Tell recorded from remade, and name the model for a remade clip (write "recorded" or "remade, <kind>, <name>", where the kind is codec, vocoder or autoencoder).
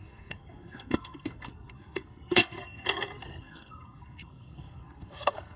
remade, codec, SNAC